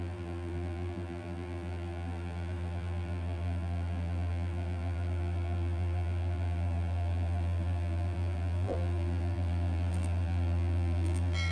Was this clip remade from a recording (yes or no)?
yes